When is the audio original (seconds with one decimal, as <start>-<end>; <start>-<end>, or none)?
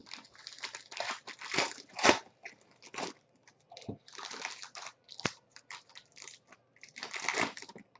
0.0-8.0